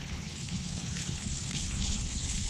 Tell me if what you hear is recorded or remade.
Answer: remade